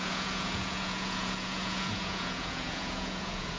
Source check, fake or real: fake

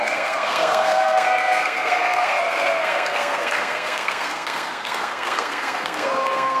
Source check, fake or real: fake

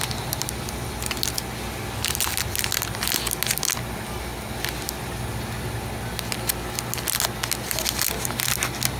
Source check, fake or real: real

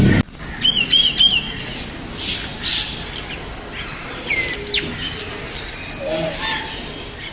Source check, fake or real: real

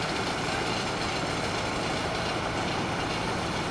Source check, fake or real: real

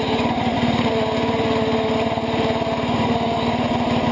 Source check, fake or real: real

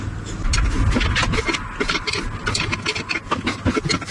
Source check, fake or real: real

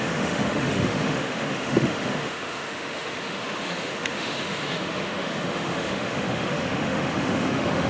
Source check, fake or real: fake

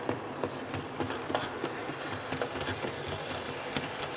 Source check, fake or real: fake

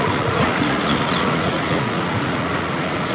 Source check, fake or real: fake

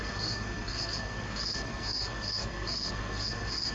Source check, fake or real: fake